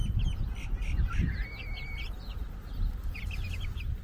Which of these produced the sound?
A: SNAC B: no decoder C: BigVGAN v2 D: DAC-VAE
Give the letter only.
B